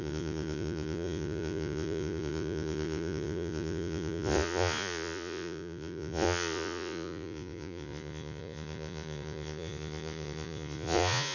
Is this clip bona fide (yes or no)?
no